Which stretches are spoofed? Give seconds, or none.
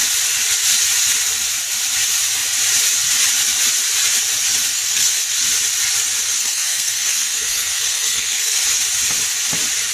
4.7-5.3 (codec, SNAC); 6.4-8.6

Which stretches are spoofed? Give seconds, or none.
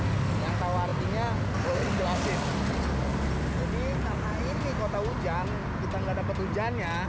none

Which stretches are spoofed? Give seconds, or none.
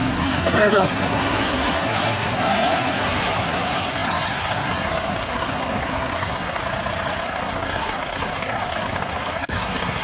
0.0-6.6 (codec, SNAC); 7.2-10.0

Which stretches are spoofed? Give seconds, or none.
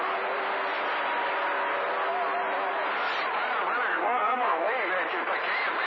3.9-4.7 (codec, SNAC)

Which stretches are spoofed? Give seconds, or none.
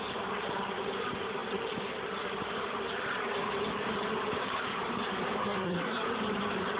5.4-6.0 (codec, SNAC)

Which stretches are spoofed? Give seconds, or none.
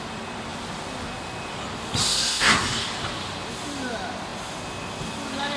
2.0-2.6 (codec, SNAC)